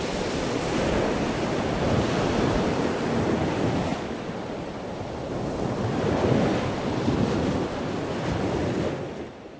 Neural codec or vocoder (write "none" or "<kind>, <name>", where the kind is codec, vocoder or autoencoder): none